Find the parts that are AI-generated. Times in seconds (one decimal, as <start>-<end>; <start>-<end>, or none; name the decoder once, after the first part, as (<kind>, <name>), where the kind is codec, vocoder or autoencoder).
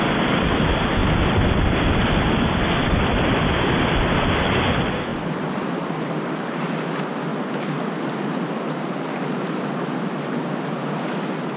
1.0-3.9 (vocoder, BigVGAN v2); 5.1-6.8